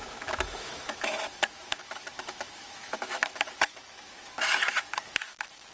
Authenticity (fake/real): fake